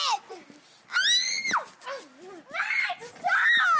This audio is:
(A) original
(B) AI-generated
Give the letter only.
A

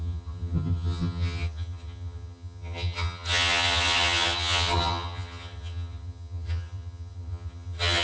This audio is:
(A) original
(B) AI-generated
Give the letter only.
B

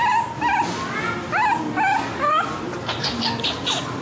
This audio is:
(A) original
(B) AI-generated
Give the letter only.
A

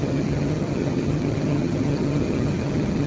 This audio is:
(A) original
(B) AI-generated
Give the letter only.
B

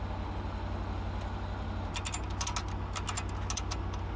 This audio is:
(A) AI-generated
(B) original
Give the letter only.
B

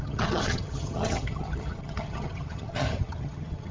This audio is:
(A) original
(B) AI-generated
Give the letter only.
B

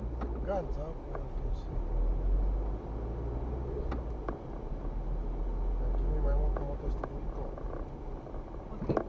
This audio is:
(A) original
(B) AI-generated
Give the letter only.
A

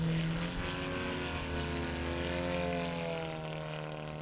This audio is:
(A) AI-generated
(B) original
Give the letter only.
B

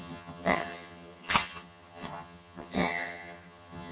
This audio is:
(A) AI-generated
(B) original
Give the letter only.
A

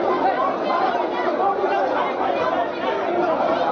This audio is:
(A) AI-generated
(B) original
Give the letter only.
B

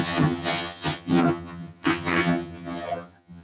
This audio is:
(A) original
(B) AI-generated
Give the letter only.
B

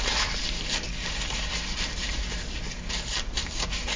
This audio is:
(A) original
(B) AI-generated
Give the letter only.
A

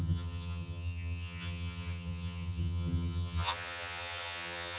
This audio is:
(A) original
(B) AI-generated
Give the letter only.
B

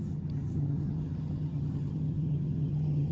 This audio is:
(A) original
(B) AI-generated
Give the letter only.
B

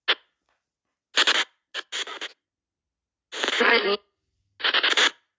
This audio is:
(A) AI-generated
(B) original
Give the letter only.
B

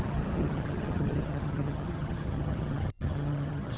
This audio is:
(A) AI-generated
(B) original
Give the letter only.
A